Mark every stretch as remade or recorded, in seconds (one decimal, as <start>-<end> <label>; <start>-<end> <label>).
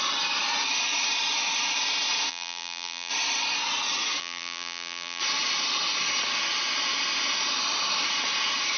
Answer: 0.0-2.3 recorded; 2.3-3.1 remade; 3.1-4.2 recorded; 4.2-5.2 remade; 5.2-8.8 recorded